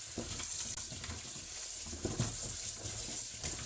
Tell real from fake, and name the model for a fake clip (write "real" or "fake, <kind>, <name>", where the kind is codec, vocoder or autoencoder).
real